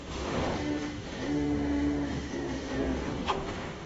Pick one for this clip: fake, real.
fake